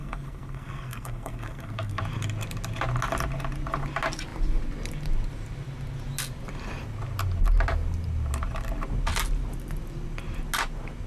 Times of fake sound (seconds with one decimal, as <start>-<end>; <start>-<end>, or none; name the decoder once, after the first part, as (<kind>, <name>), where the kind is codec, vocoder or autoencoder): 0.0-2.0 (codec, SNAC)